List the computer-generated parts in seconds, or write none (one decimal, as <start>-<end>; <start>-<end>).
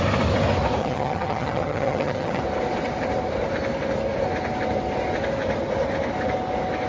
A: 0.8-2.4